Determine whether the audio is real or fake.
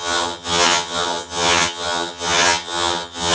fake